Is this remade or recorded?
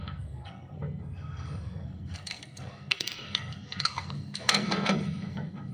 remade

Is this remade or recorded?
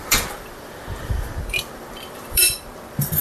remade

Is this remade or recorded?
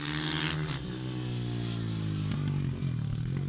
recorded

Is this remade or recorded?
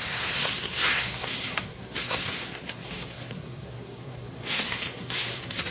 remade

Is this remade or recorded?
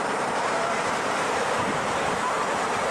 remade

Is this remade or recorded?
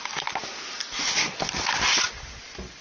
recorded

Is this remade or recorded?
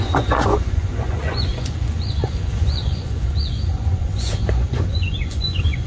remade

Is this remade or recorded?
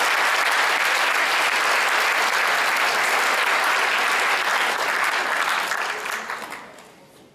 recorded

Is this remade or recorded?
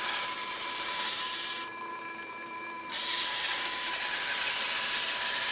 recorded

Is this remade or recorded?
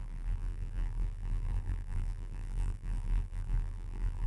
remade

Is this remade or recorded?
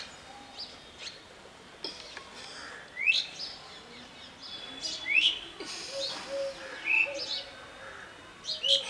recorded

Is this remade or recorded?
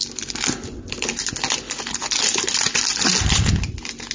recorded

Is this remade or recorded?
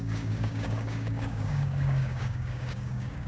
remade